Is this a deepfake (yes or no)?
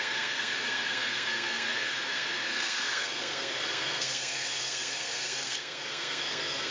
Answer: yes